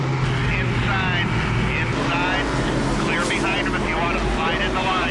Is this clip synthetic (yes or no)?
no